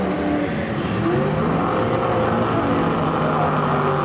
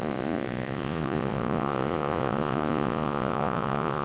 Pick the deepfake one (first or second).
second